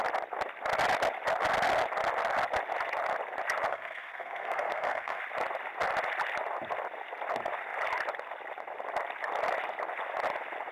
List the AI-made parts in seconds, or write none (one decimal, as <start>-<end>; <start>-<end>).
3.7-5.2